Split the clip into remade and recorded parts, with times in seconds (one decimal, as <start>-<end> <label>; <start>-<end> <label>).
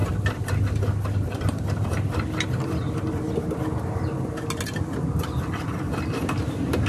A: 0.0-3.3 remade; 3.3-6.9 recorded